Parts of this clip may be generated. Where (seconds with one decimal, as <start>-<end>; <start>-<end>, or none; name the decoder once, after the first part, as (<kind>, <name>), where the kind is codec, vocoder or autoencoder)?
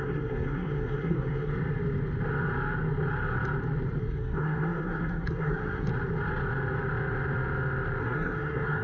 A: 0.0-1.5 (codec, SNAC); 4.0-5.9; 8.0-8.8